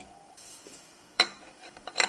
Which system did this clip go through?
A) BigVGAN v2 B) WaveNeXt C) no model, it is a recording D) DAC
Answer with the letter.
D